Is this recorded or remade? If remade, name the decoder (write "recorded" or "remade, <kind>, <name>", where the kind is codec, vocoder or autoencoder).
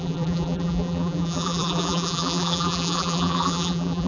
remade, vocoder, BigVGAN v2